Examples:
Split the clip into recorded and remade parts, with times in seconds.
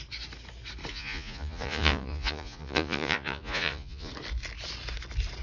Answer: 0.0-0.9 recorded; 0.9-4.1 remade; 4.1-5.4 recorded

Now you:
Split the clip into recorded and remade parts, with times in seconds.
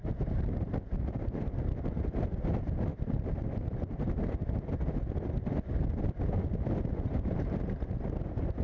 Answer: 0.0-8.6 recorded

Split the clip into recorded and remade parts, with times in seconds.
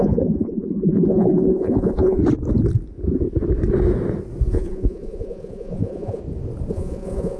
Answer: 0.0-2.2 remade; 2.2-4.5 recorded; 4.5-6.2 remade; 6.2-6.7 recorded; 6.7-7.4 remade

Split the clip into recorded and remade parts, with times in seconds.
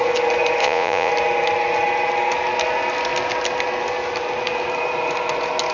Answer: 0.0-0.6 recorded; 0.6-1.1 remade; 1.1-5.7 recorded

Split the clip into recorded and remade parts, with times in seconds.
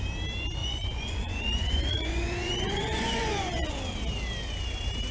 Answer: 0.0-0.6 recorded; 0.6-3.7 remade; 3.7-5.1 recorded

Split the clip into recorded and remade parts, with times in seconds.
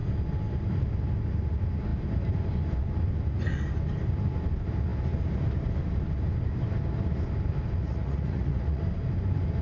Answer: 0.0-7.8 recorded; 7.8-8.8 remade; 8.8-9.6 recorded